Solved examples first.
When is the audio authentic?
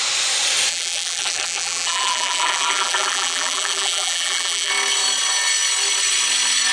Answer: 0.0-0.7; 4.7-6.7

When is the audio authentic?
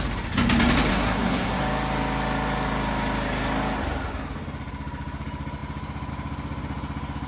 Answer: 0.0-0.9; 1.6-7.3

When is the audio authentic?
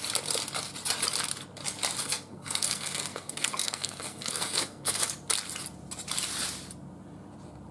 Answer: 0.0-2.0; 5.0-7.7